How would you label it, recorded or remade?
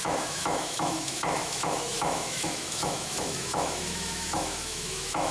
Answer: remade